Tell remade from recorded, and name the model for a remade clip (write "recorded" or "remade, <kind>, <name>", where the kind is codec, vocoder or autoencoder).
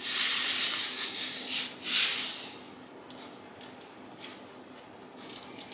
recorded